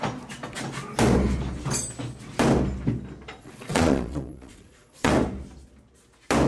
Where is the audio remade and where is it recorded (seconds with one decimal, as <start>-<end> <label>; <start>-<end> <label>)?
0.0-3.4 recorded; 3.4-5.1 remade; 5.1-6.5 recorded